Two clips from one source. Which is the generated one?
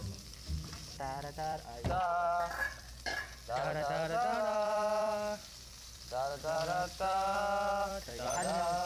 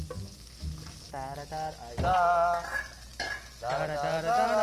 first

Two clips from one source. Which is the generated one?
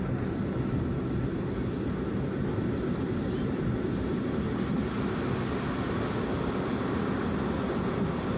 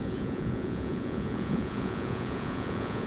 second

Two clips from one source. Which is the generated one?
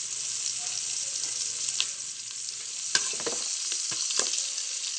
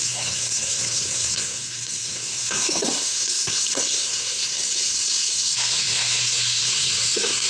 second